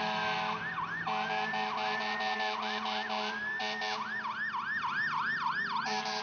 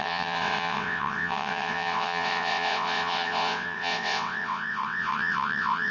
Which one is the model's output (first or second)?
second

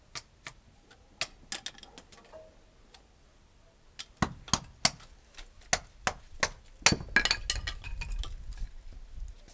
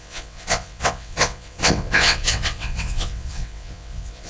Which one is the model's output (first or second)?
second